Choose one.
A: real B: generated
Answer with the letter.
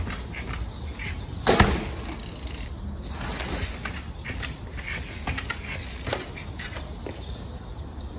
A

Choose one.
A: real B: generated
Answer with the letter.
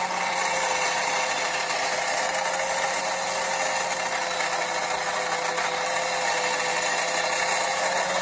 A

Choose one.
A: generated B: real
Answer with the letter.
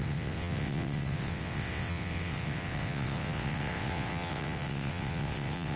A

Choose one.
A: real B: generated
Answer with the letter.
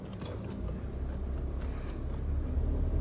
A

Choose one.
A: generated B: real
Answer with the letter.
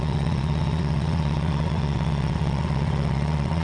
A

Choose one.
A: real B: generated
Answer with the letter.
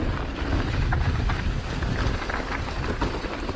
A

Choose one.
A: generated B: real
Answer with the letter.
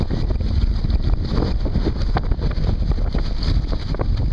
B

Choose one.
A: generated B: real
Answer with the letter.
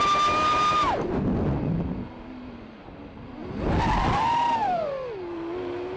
B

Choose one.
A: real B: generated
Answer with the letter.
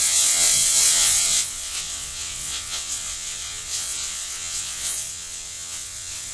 B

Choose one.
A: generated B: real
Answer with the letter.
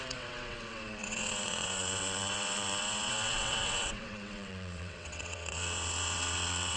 A